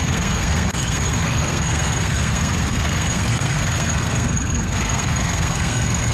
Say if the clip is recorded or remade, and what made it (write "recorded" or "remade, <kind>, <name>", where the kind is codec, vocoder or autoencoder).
remade, codec, SNAC